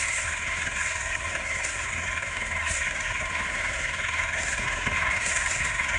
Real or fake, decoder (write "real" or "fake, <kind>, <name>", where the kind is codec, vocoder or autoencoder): fake, codec, SNAC